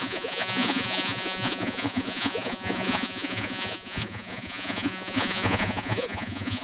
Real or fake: fake